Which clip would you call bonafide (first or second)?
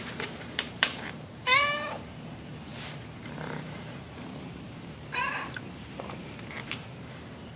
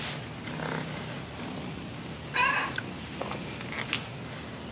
second